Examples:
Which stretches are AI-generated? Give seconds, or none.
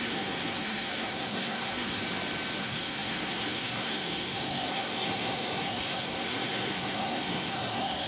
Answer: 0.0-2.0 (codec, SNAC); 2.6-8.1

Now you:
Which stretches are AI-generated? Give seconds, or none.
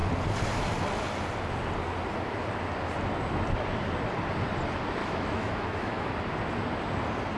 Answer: 5.0-6.1 (autoencoder, DAC-VAE)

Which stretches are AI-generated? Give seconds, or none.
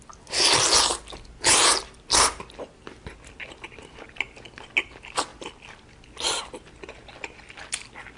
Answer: none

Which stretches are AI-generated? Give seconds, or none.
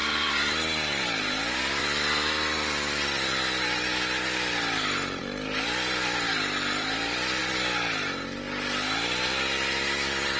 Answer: 0.0-1.8 (vocoder, BigVGAN v2); 5.2-7.4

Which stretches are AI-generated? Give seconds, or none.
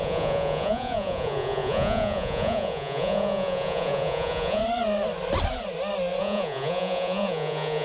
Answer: 0.0-4.6 (vocoder, Vocos); 6.2-7.8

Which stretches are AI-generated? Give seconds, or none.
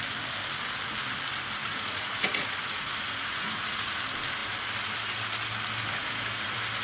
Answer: 1.6-4.0 (vocoder, Vocos)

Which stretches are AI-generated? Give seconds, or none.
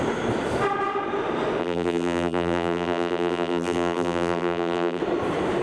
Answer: 1.6-5.0 (vocoder, BigVGAN v2)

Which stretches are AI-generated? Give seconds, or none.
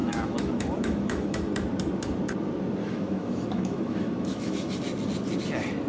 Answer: 0.0-1.5 (autoencoder, DAC-VAE); 2.8-4.7